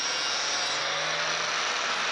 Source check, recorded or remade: recorded